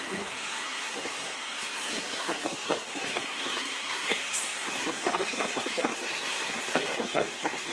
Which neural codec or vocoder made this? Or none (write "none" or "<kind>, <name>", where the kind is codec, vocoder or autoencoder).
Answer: codec, SNAC